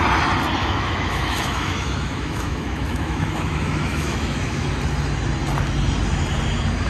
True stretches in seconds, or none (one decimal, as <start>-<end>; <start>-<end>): 0.0-0.6; 4.7-6.9